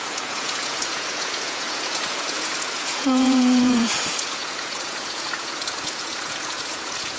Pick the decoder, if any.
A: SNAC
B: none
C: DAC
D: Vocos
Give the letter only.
D